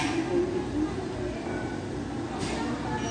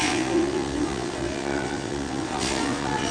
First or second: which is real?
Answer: first